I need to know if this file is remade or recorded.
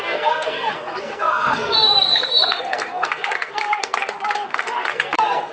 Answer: remade